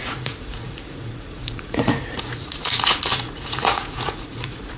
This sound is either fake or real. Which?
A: fake